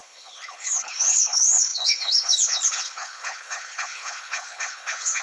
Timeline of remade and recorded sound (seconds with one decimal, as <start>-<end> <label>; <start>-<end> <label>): 0.0-5.2 remade